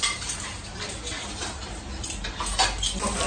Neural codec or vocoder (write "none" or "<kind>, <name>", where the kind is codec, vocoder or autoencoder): none